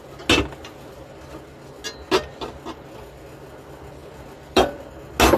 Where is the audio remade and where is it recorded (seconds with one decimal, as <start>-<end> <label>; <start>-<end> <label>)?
0.0-5.4 recorded